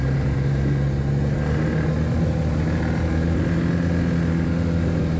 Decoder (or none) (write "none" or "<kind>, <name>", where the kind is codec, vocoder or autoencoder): none